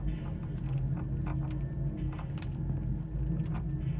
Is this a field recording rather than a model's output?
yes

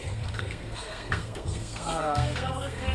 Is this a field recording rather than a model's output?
no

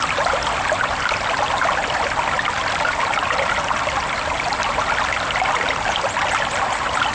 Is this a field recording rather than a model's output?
yes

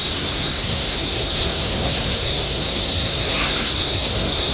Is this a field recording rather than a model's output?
no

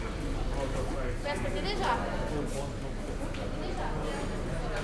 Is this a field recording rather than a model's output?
yes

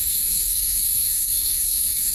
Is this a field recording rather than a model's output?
no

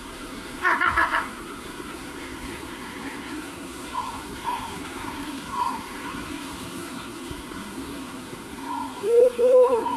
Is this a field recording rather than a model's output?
no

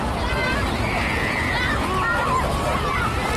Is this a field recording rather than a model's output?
yes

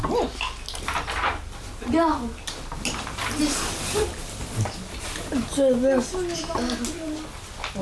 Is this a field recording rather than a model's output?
yes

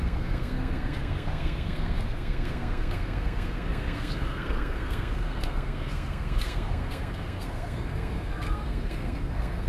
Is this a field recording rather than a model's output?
no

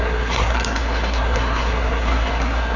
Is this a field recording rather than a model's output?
no